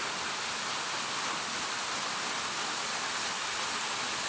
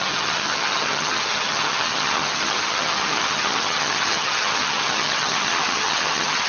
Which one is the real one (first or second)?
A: first